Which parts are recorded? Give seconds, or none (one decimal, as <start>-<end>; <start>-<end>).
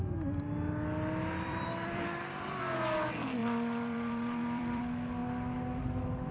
0.0-1.5; 2.6-3.4; 4.8-6.3